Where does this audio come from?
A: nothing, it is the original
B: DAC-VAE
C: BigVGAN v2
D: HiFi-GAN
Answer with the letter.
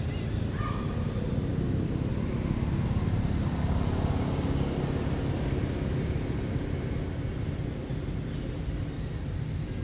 A